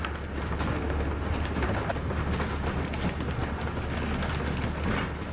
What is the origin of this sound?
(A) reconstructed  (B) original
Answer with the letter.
B